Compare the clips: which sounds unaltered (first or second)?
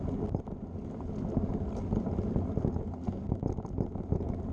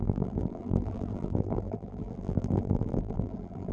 first